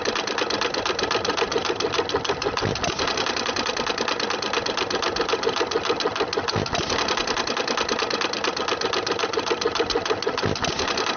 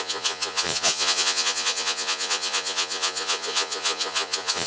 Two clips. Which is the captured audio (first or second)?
first